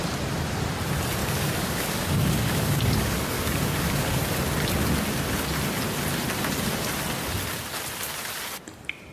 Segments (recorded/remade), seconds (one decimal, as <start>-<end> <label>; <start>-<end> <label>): 0.0-1.2 recorded; 1.2-4.2 remade; 4.2-9.1 recorded